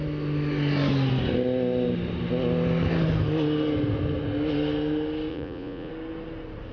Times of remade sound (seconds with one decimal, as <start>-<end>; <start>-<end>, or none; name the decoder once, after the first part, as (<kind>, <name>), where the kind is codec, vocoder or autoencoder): 5.3-5.9 (vocoder, Vocos)